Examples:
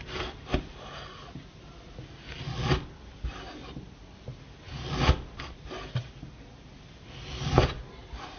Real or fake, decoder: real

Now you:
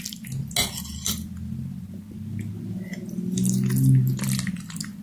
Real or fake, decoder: real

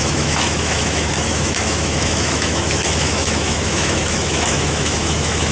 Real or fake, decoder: fake, autoencoder, DAC-VAE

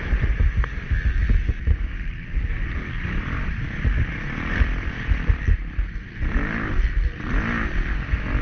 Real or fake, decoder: real